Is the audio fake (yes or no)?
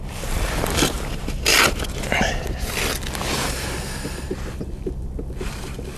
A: yes